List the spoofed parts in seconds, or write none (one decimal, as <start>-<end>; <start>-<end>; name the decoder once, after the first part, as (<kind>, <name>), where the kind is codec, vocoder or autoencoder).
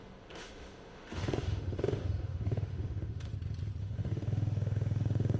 0.0-3.3 (autoencoder, DAC-VAE); 3.8-5.4